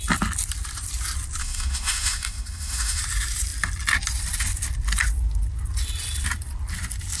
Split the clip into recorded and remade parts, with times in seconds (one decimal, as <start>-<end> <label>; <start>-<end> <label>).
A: 0.0-1.4 recorded; 1.4-3.0 remade; 3.0-7.2 recorded